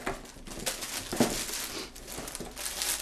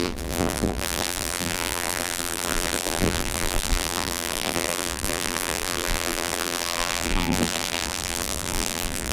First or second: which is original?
first